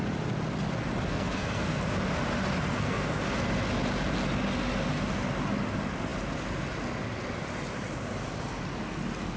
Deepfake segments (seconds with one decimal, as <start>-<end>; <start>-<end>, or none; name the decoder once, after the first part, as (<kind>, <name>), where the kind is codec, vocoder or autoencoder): 1.1-1.8 (codec, SNAC); 2.7-3.2